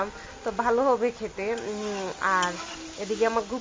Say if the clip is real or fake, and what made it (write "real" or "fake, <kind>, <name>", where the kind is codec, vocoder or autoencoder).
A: real